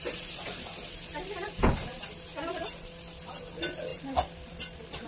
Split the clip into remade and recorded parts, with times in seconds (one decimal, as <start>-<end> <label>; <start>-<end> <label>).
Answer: 0.0-5.1 recorded